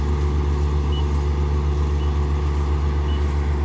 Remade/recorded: recorded